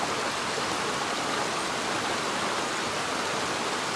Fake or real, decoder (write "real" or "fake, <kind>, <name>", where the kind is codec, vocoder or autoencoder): real